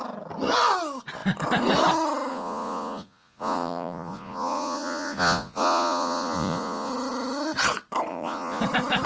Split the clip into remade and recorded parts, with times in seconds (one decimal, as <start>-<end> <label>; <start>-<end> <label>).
0.0-2.3 recorded; 2.3-6.9 remade; 6.9-8.1 recorded; 8.1-8.6 remade; 8.6-9.1 recorded